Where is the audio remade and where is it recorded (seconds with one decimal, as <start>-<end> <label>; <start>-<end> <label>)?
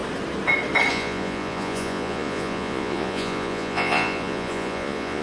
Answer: 0.0-0.9 recorded; 0.9-5.2 remade